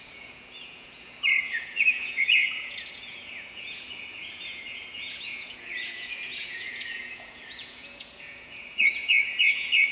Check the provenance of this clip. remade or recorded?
remade